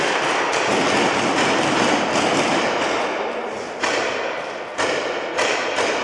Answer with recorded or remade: recorded